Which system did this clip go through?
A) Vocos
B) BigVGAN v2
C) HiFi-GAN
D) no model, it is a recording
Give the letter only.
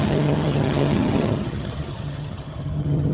C